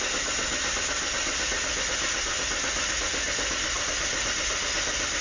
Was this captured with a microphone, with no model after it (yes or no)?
yes